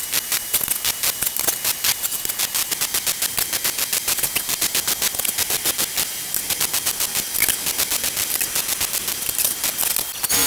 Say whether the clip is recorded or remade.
recorded